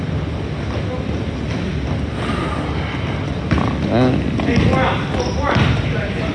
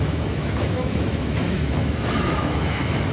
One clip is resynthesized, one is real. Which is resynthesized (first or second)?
second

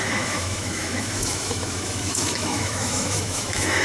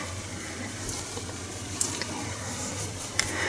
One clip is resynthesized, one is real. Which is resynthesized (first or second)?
first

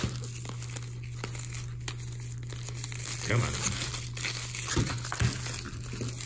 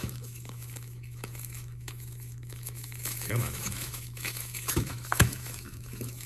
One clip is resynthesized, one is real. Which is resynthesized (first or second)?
second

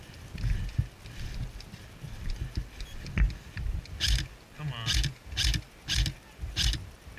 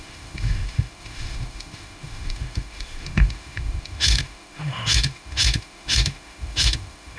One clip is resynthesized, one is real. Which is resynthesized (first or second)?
second